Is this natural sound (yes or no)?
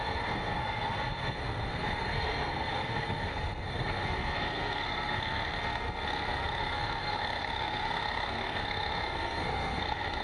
no